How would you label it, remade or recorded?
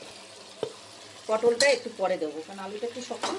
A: recorded